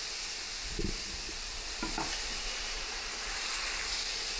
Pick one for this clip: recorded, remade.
recorded